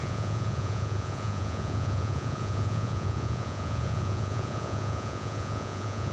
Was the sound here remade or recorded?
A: remade